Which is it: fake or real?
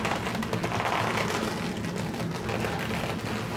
real